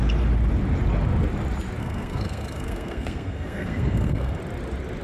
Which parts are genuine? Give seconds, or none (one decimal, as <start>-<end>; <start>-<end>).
0.0-1.8; 4.4-5.0